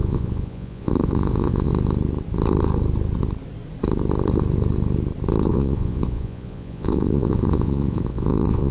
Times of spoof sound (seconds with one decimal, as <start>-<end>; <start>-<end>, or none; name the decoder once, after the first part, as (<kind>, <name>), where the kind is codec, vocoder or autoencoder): 0.0-1.7 (vocoder, Vocos); 5.5-8.7

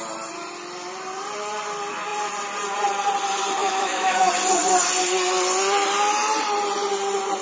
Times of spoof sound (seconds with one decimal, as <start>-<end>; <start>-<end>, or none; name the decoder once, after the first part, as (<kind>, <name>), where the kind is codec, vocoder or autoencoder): 3.6-4.3 (autoencoder, DAC-VAE)

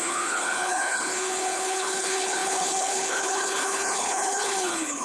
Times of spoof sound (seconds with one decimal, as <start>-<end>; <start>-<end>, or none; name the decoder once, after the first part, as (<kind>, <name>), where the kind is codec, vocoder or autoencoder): 0.0-5.0 (codec, HILCodec)

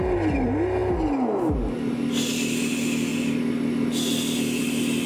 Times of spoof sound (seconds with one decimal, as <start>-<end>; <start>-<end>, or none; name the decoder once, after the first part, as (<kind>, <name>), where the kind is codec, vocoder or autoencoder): none

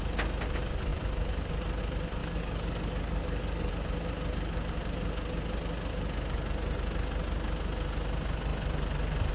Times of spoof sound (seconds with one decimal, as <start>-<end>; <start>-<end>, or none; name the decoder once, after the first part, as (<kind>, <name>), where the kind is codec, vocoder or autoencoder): 2.2-3.7 (codec, DAC)

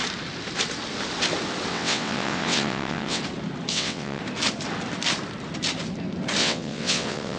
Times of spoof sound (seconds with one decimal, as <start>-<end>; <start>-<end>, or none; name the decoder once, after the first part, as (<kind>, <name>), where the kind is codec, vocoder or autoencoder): 1.7-3.2 (vocoder, WaveNeXt); 3.7-4.2; 6.4-7.4

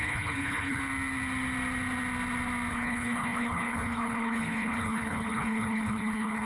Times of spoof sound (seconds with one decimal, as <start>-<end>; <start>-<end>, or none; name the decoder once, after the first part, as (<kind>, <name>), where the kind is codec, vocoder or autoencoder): 0.0-0.8 (codec, HILCodec); 2.7-6.5